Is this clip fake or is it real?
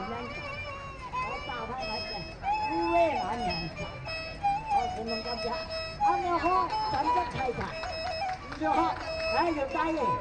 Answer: real